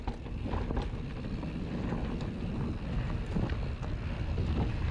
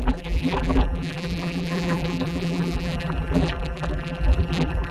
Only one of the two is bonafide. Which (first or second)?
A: first